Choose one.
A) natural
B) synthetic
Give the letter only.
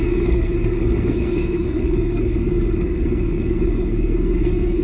B